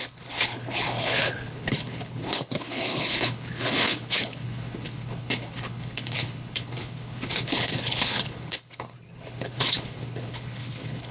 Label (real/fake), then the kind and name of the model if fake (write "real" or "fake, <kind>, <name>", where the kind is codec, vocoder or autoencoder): fake, codec, HILCodec